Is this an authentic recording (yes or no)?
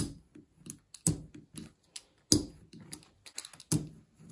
yes